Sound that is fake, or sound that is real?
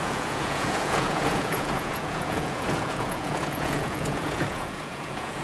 fake